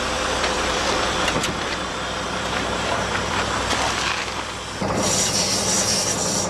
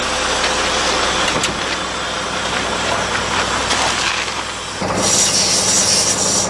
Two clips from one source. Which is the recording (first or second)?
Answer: second